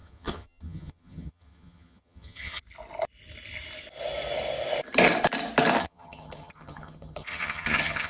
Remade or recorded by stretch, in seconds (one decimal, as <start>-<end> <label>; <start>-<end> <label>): 0.0-2.6 remade; 2.6-5.8 recorded; 5.8-8.1 remade